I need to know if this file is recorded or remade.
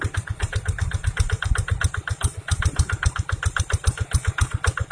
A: recorded